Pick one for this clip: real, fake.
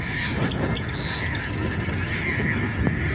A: real